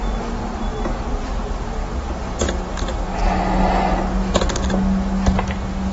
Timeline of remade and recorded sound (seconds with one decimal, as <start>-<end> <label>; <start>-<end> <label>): 0.0-0.7 recorded; 0.7-2.5 remade; 2.5-5.9 recorded